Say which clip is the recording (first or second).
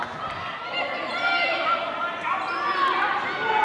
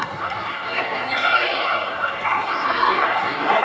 first